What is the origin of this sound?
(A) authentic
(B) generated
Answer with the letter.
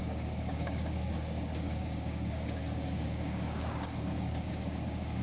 B